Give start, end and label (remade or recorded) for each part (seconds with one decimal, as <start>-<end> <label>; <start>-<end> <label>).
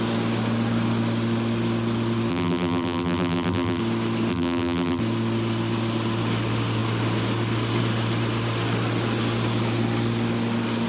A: 0.0-2.3 recorded; 2.3-3.8 remade; 3.8-4.3 recorded; 4.3-5.0 remade; 5.0-10.9 recorded